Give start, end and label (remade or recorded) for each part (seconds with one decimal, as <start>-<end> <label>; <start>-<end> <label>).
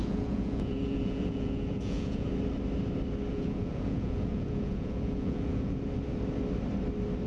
0.0-2.3 remade; 2.3-3.3 recorded; 3.3-5.8 remade; 5.8-7.3 recorded